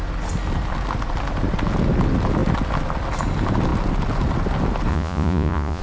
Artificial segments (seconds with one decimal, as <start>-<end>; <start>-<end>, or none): 4.9-5.8